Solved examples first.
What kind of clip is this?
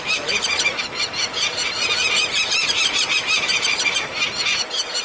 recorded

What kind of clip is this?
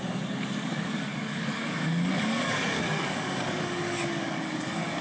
remade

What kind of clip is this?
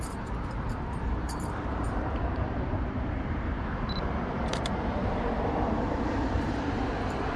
remade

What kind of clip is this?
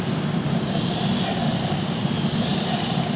recorded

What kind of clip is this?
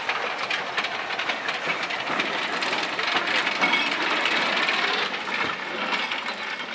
recorded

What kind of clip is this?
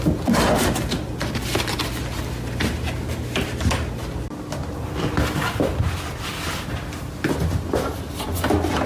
recorded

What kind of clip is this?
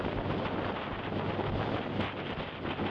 recorded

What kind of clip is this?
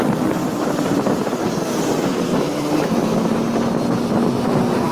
recorded